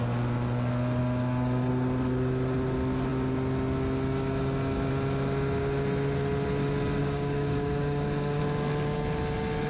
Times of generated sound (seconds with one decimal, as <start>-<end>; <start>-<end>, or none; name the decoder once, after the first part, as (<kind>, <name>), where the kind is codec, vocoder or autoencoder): 1.0-1.7 (codec, DAC); 7.0-8.4